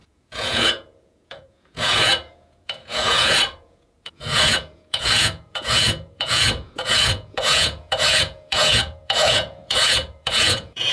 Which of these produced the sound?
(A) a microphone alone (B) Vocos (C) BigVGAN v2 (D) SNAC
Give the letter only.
B